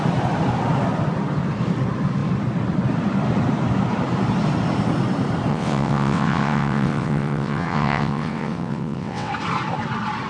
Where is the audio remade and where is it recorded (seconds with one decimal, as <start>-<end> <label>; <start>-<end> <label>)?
0.0-5.5 recorded; 5.5-9.3 remade; 9.3-10.3 recorded